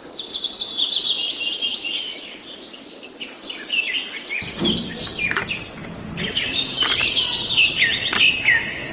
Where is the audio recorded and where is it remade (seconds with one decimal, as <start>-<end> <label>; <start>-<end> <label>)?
0.0-8.9 recorded